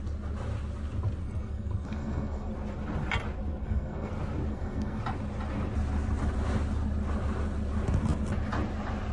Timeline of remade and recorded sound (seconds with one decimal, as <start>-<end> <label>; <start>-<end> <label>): 0.0-1.2 recorded; 1.2-2.5 remade; 2.5-3.6 recorded; 3.6-4.1 remade; 4.1-4.5 recorded; 4.5-5.0 remade; 5.0-9.1 recorded